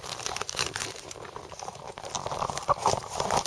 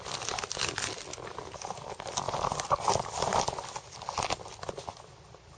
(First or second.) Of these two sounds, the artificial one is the first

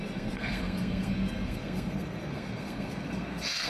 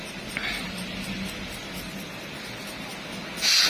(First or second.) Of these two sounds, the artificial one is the first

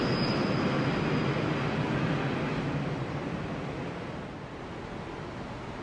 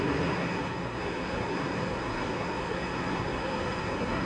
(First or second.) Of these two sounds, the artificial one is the second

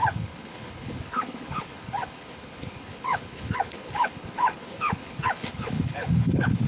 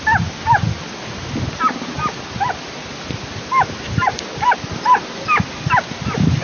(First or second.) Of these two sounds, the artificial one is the first